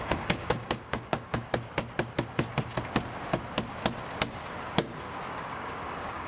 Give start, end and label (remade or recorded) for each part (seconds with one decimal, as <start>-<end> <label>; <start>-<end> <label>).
0.0-1.5 remade; 1.5-5.3 recorded; 5.3-6.3 remade